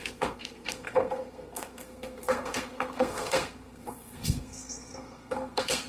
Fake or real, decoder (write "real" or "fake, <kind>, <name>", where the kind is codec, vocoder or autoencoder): fake, codec, SNAC